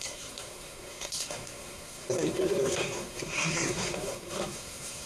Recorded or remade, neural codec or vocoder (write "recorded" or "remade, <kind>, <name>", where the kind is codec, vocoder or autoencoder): remade, codec, SNAC